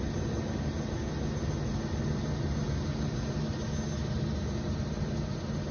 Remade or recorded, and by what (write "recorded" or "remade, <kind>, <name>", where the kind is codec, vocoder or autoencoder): recorded